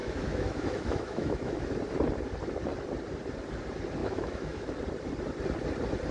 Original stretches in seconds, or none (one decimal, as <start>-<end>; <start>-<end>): 1.7-4.0; 4.7-6.1